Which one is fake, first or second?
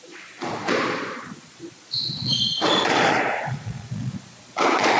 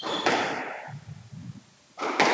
first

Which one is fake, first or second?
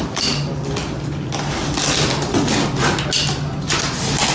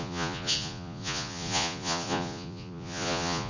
second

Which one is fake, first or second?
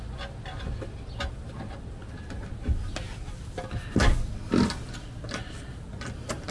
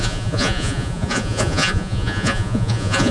second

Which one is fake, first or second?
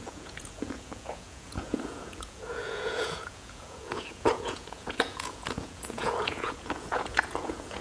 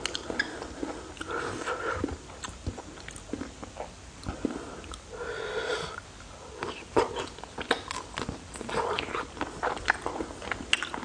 first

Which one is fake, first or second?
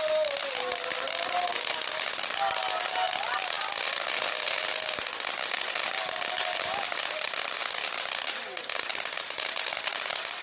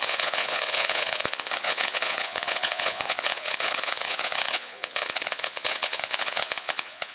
second